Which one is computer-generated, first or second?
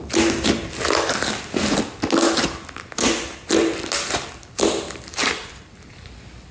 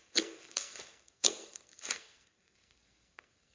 second